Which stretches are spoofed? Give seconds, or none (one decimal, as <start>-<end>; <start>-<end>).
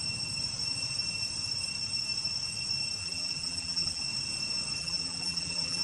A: 3.0-4.0; 4.8-5.8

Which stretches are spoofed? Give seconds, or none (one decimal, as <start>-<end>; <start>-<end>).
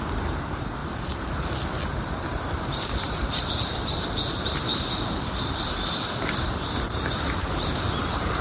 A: 0.0-0.8; 1.9-4.7; 5.5-8.4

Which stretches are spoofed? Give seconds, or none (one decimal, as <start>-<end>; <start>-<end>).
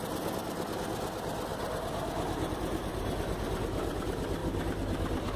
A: none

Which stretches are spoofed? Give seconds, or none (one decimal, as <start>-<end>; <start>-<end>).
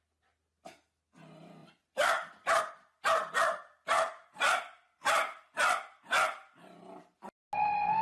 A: 1.6-2.6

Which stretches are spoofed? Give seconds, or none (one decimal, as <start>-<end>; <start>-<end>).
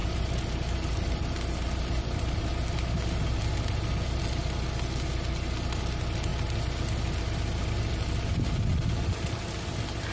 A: 8.7-9.4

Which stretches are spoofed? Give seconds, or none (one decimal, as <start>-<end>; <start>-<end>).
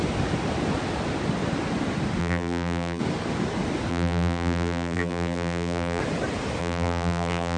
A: 2.2-3.0; 3.9-6.0; 6.6-7.6